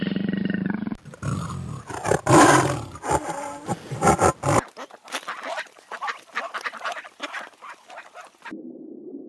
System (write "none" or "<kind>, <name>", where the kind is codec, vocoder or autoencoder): none